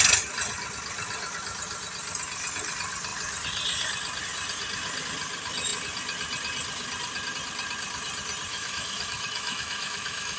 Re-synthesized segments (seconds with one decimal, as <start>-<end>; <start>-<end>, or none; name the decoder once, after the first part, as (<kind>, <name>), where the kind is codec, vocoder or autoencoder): 8.5-10.4 (autoencoder, DAC-VAE)